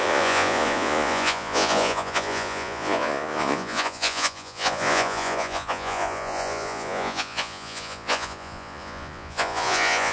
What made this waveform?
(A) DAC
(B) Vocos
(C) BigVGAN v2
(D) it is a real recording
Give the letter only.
B